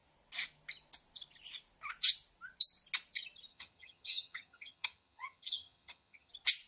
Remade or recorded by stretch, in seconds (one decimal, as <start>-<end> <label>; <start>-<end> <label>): 0.0-3.5 recorded; 3.5-6.3 remade; 6.3-6.7 recorded